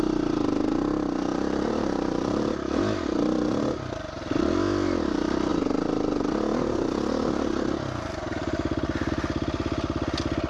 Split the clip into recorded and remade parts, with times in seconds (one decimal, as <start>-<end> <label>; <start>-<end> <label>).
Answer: 0.0-1.3 recorded; 1.3-3.6 remade; 3.6-10.5 recorded